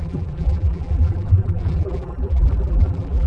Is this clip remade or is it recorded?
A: remade